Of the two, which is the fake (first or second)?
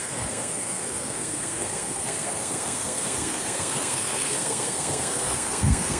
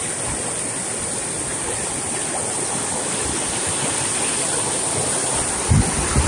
first